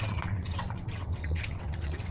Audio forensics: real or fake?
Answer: fake